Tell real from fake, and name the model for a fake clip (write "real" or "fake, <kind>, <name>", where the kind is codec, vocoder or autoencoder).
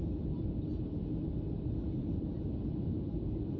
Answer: real